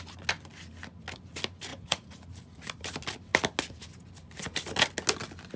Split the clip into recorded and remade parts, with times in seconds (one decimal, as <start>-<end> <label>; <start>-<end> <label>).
0.0-1.7 recorded; 1.7-2.3 remade; 2.3-5.6 recorded